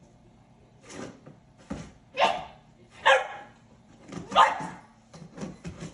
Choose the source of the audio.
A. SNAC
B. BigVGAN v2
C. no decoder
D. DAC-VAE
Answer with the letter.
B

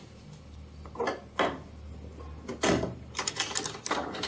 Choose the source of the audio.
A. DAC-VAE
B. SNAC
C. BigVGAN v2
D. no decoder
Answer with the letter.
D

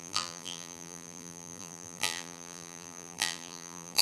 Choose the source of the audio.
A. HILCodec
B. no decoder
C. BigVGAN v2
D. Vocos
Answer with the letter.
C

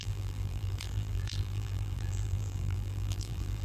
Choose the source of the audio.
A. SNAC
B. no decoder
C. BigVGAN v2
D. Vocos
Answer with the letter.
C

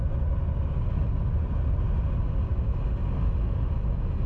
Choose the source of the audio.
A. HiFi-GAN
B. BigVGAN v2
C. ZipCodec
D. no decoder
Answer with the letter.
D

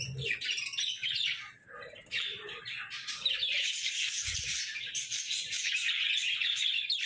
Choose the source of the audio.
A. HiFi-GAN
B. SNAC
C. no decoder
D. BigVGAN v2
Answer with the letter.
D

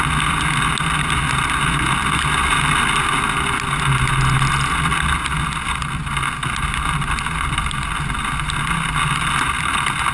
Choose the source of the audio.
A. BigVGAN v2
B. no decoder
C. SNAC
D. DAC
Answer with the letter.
B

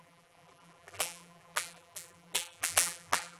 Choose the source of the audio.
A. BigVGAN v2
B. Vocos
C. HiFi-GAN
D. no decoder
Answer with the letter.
A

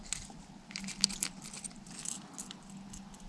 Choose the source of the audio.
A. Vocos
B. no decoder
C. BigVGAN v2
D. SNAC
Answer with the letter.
B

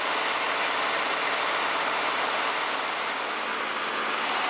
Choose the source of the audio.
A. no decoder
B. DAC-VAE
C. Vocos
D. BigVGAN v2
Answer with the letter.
A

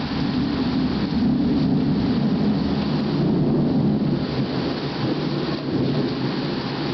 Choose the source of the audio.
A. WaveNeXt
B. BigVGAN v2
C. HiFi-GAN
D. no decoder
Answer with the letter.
D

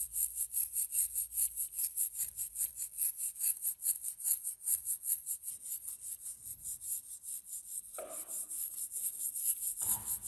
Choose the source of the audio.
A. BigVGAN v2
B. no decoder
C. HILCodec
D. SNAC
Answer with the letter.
B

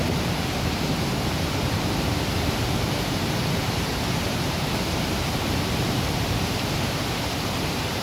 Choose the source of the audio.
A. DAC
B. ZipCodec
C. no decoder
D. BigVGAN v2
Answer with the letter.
D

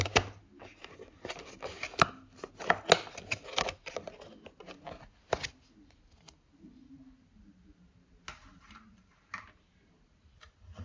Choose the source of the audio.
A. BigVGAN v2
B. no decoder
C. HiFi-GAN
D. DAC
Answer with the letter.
B